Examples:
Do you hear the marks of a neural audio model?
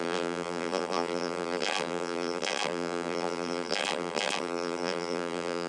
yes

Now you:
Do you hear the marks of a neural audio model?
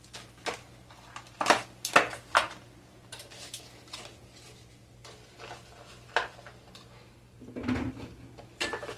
no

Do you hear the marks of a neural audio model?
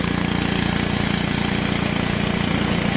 no